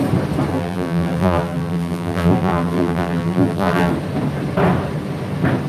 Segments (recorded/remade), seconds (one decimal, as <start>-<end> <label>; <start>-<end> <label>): 0.0-0.5 recorded; 0.5-3.9 remade; 3.9-5.7 recorded